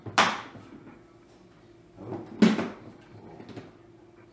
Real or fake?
real